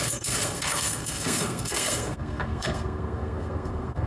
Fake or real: fake